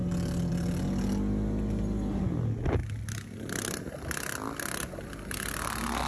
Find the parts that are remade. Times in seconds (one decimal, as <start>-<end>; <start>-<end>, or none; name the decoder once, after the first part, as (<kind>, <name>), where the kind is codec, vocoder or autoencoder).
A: none